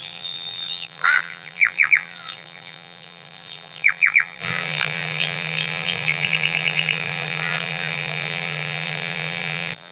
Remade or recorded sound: remade